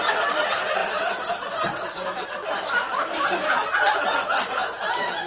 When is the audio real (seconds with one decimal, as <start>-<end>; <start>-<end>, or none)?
0.0-5.3